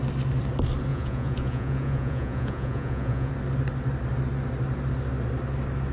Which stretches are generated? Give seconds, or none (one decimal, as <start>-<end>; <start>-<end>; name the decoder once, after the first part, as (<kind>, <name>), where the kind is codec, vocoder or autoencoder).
0.9-3.3 (vocoder, Vocos)